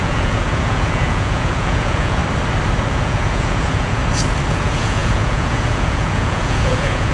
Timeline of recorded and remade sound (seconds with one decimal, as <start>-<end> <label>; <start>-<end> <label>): 0.0-2.2 remade; 2.2-2.9 recorded; 2.9-4.0 remade; 4.0-4.5 recorded; 4.5-7.1 remade